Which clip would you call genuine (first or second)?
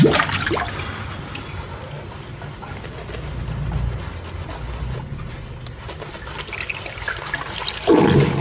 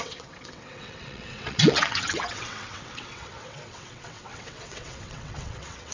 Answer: first